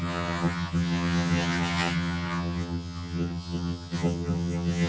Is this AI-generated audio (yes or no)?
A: yes